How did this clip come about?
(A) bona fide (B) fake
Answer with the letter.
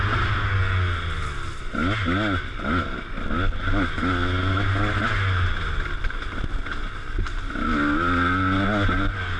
A